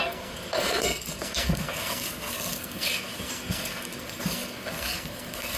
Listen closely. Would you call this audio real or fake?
fake